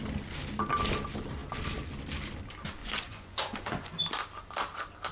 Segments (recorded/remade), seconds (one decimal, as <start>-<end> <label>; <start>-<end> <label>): 0.0-2.8 recorded; 2.8-3.9 remade; 3.9-5.1 recorded